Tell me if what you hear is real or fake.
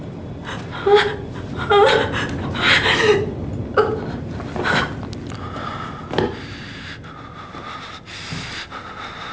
real